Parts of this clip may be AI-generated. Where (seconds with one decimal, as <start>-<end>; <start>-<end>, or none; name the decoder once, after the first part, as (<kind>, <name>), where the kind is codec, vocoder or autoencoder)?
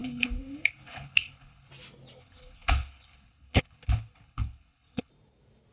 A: 0.0-1.7 (codec, HILCodec); 2.2-5.1